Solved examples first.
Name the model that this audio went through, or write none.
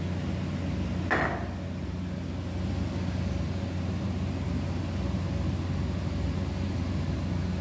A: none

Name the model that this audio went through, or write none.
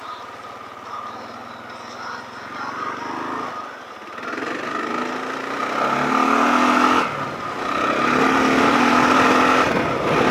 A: none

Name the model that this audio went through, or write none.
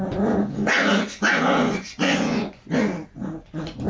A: vocoder, Vocos